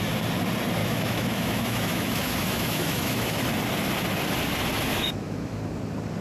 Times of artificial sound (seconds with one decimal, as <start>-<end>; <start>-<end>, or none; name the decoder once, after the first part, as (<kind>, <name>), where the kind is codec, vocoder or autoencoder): 0.8-3.4 (autoencoder, DAC-VAE); 4.9-5.6